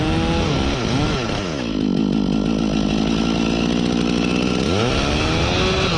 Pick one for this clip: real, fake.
real